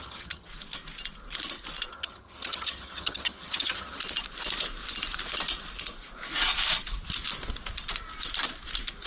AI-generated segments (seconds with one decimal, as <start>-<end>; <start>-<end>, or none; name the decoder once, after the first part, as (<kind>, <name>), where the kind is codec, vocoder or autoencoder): 0.0-0.5 (vocoder, HiFi-GAN); 1.9-4.0